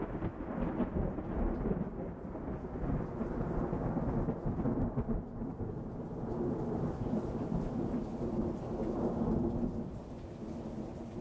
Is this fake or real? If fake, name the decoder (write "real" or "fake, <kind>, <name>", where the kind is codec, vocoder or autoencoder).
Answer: real